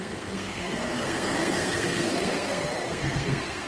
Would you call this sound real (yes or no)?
no